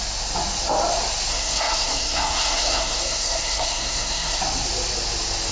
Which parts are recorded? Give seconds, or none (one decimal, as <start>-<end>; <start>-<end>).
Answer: 0.0-1.3; 4.4-5.5